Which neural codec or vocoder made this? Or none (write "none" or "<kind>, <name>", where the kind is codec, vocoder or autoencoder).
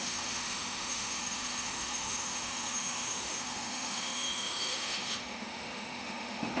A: autoencoder, DAC-VAE